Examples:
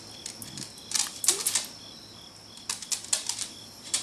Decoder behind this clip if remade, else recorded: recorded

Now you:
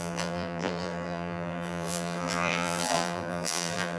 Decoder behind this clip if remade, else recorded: remade, vocoder, BigVGAN v2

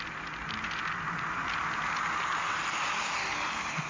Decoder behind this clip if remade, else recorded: recorded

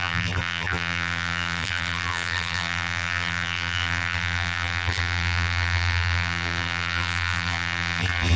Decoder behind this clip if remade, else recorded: remade, vocoder, BigVGAN v2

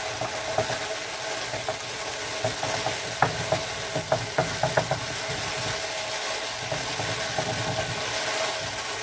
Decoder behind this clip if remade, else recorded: recorded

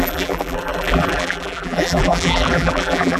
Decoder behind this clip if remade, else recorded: remade, vocoder, BigVGAN v2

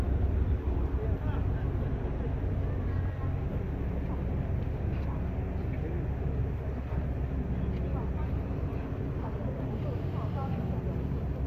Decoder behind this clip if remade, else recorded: recorded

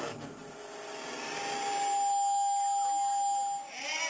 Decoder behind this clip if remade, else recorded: recorded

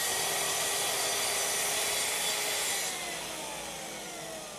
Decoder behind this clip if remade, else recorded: recorded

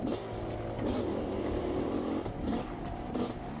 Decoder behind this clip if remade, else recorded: remade, vocoder, BigVGAN v2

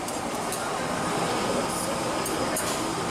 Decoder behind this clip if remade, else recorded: recorded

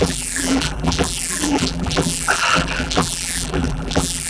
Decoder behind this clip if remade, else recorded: remade, vocoder, BigVGAN v2